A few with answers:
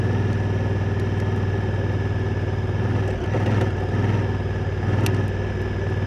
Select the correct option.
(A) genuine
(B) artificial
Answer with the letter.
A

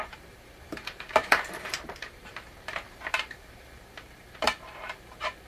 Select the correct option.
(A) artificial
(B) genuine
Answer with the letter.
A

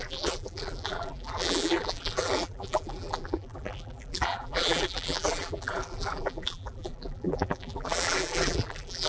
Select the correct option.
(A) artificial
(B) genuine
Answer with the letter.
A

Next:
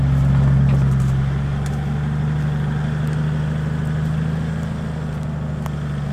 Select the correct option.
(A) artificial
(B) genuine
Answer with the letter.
B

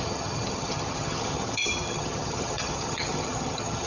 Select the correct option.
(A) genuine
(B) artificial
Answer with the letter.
B